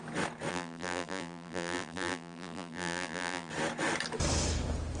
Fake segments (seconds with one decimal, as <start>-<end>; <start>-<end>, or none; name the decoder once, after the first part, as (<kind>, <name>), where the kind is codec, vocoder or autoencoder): 0.5-3.5 (vocoder, BigVGAN v2)